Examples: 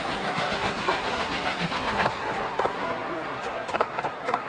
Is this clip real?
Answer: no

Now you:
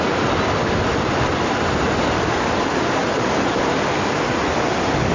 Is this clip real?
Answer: yes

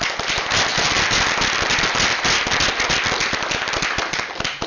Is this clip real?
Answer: yes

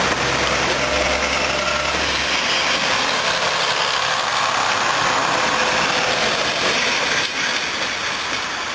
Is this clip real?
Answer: yes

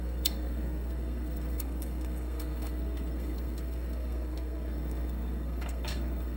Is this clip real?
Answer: no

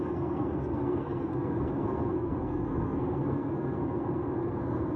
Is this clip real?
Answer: no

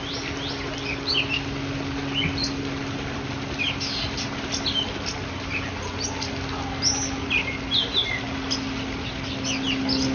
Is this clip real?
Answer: yes